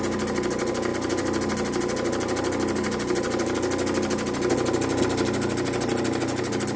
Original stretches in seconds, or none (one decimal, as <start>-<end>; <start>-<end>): 0.0-6.8